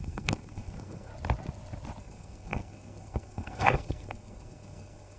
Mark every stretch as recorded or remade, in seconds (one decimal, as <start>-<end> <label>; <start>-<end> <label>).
0.0-1.1 remade; 1.1-2.0 recorded; 2.0-5.2 remade